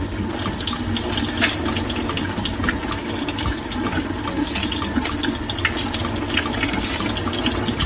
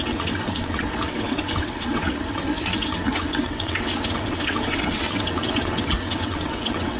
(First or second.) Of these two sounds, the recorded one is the first